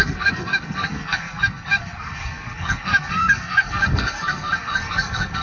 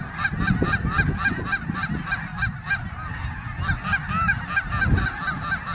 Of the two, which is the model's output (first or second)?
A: first